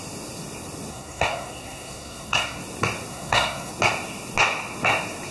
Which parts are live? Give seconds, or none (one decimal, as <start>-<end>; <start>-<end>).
0.0-0.9; 2.6-3.1; 3.7-5.3